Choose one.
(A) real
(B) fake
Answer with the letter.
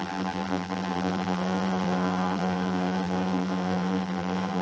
B